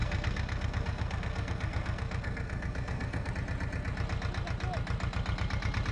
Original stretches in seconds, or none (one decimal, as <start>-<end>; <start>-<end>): 3.3-5.9